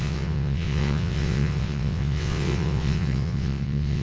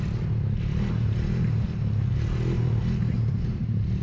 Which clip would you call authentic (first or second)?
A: second